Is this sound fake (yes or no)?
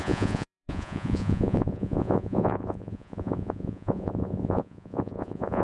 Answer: yes